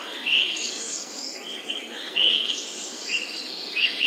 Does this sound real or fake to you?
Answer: fake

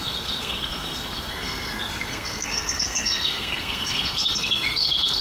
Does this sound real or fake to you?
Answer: fake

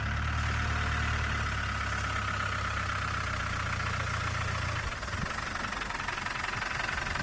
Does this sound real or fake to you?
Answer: real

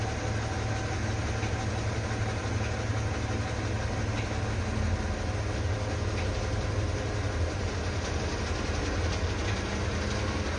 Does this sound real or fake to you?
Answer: real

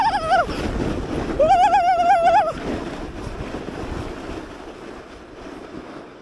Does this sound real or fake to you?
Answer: real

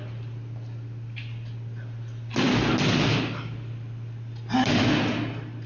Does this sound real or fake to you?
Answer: real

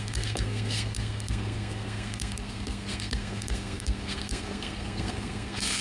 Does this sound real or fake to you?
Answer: fake